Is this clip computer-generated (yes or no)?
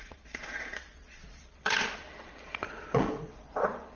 yes